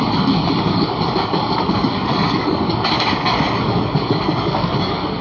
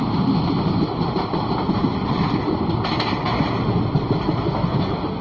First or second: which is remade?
first